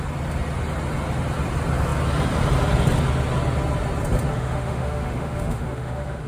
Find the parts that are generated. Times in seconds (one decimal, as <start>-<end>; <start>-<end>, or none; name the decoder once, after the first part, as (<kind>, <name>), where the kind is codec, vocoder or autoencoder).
4.3-6.3 (autoencoder, DAC-VAE)

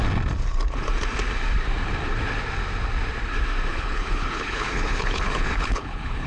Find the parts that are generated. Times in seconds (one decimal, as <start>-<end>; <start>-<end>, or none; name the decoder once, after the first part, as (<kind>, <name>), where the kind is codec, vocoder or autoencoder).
3.7-6.3 (codec, HILCodec)

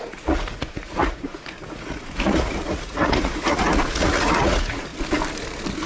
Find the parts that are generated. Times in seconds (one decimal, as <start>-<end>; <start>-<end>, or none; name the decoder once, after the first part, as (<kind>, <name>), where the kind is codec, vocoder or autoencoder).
0.0-4.9 (vocoder, Vocos)

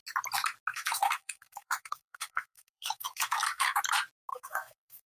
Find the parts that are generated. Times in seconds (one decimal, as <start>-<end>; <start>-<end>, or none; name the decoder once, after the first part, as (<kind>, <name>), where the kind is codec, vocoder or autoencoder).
0.7-3.8 (codec, SNAC); 4.3-5.1

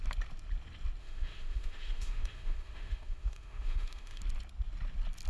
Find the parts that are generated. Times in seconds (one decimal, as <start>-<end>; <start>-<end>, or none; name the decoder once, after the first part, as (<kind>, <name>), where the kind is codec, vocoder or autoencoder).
1.0-4.2 (autoencoder, DAC-VAE)